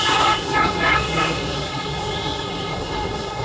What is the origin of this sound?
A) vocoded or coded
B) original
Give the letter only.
A